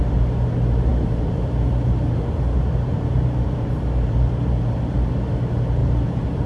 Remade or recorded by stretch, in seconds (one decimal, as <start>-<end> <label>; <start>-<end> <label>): 0.0-0.9 recorded; 0.9-4.8 remade; 4.8-5.8 recorded; 5.8-6.5 remade